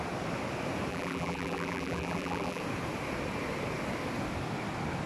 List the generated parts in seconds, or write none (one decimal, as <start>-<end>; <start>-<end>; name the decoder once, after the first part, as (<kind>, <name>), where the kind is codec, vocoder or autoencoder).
0.9-2.6 (vocoder, BigVGAN v2)